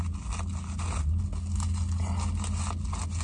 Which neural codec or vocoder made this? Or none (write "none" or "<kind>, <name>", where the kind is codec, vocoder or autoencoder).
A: none